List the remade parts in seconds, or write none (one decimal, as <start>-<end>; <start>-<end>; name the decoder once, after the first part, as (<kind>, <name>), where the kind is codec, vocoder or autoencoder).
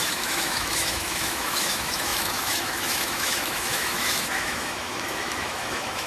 0.0-6.1 (autoencoder, DAC-VAE)